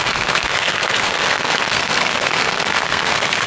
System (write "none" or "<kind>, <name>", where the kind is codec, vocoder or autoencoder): codec, SNAC